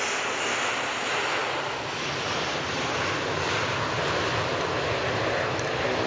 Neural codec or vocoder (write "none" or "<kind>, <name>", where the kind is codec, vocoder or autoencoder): none